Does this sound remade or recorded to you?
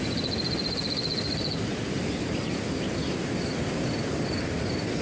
recorded